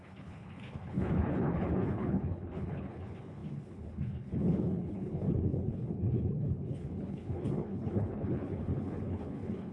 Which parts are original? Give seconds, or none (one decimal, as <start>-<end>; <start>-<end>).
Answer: none